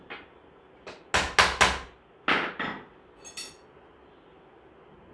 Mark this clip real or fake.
real